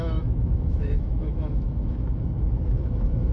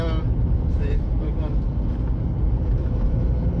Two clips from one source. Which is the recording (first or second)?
second